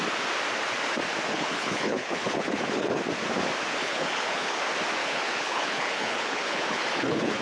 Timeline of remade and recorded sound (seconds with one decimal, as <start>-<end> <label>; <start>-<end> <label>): 0.0-1.3 recorded; 1.3-3.0 remade; 3.0-3.8 recorded; 3.8-4.6 remade; 4.6-5.0 recorded; 5.0-7.4 remade